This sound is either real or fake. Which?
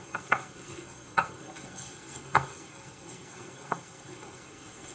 fake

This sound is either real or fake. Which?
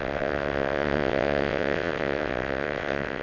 fake